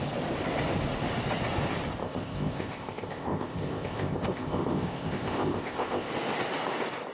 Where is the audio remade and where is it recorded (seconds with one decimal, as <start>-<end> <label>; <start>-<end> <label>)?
0.0-2.0 recorded; 2.0-6.1 remade; 6.1-7.1 recorded

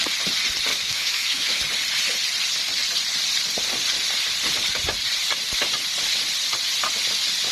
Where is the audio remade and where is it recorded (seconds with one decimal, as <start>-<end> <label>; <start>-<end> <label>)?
0.0-0.7 recorded; 0.7-1.6 remade; 1.6-7.5 recorded

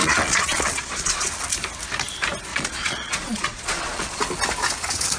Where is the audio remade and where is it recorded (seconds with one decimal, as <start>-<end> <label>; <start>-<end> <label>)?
0.0-1.3 remade; 1.3-2.5 recorded; 2.5-4.2 remade; 4.2-5.2 recorded

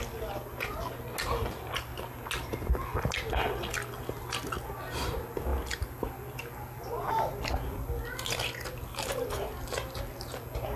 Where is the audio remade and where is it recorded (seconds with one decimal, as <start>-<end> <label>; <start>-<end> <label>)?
0.0-10.8 recorded

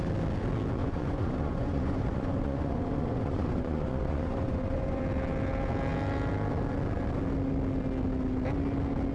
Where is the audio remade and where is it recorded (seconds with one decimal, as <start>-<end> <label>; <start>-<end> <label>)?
0.0-0.8 recorded; 0.8-5.0 remade; 5.0-9.1 recorded

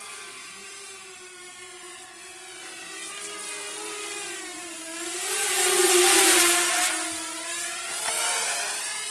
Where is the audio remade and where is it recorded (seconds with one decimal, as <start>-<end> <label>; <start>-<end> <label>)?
0.0-0.6 recorded; 0.6-1.5 remade; 1.5-4.5 recorded; 4.5-6.8 remade; 6.8-9.1 recorded

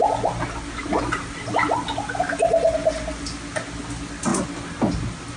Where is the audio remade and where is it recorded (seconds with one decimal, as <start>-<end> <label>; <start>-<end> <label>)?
0.0-5.4 recorded